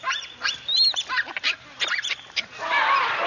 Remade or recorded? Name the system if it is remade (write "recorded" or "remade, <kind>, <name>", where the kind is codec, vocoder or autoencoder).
recorded